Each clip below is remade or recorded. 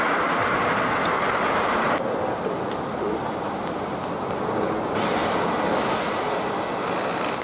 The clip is recorded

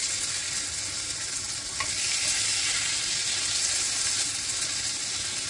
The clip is recorded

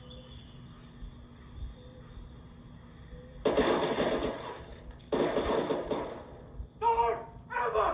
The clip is recorded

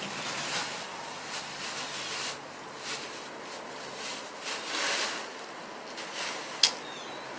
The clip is recorded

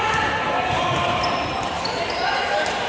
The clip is recorded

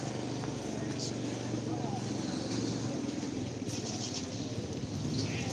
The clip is recorded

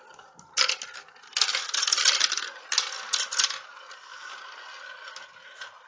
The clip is recorded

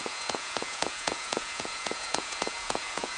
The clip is remade